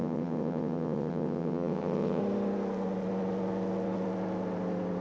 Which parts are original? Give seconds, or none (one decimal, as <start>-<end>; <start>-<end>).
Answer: 2.2-5.0